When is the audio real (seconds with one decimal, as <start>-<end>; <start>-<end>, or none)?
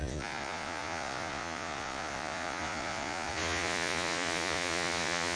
none